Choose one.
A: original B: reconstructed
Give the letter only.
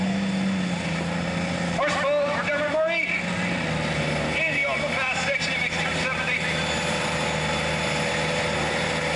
A